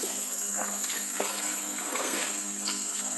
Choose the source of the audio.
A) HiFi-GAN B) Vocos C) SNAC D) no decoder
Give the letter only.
C